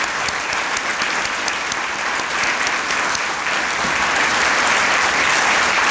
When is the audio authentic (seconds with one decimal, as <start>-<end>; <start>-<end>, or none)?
0.0-5.9